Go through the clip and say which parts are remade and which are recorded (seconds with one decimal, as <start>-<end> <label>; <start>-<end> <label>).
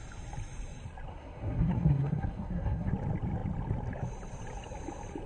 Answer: 0.0-1.1 recorded; 1.1-2.9 remade; 2.9-5.3 recorded